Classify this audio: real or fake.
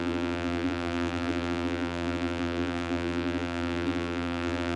fake